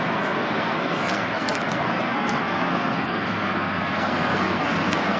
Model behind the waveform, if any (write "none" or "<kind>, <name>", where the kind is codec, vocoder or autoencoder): codec, SNAC